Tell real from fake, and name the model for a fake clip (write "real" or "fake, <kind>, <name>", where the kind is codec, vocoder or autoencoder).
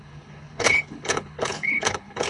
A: fake, codec, HILCodec